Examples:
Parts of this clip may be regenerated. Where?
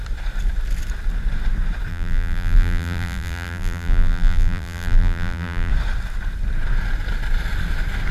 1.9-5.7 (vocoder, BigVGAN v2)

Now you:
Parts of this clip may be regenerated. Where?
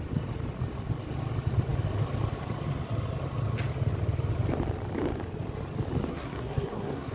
6.1-7.1 (codec, SNAC)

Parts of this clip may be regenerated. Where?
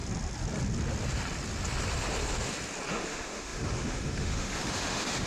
2.9-5.3 (autoencoder, DAC-VAE)